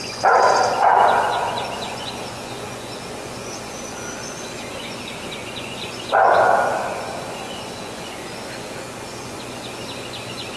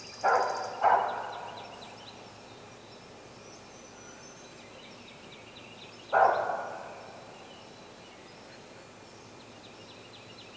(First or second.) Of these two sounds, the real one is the second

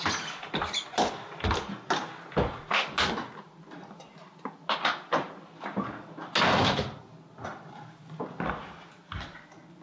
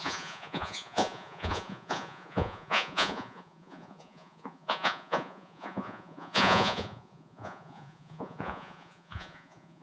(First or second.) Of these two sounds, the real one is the first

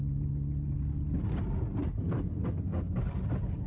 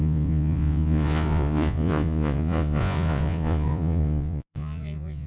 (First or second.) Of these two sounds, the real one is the first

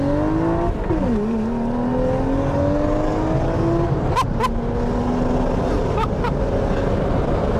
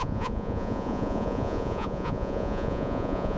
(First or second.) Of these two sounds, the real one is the first